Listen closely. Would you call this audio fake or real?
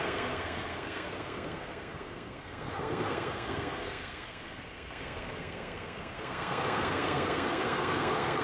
fake